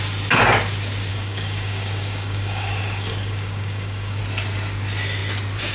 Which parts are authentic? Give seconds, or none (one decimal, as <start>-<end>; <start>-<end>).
0.0-1.1; 4.2-5.7